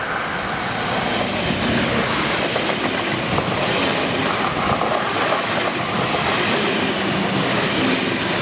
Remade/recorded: recorded